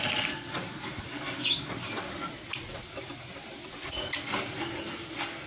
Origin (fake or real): real